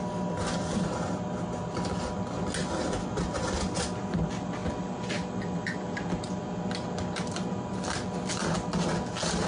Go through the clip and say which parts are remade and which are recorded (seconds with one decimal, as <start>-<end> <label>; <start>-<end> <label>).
0.0-9.5 recorded